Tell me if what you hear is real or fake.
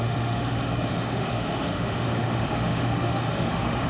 fake